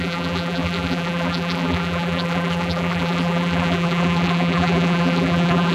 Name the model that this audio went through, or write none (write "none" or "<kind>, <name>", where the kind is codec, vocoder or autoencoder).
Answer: vocoder, BigVGAN v2